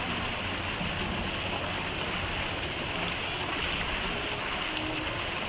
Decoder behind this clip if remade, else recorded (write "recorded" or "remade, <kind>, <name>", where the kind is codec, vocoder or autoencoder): recorded